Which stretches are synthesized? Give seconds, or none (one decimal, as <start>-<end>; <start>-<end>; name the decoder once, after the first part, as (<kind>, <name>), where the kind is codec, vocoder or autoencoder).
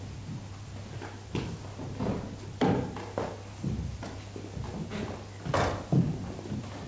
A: none